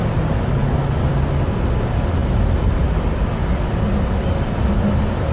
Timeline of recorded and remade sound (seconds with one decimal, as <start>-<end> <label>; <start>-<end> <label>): 0.0-5.3 recorded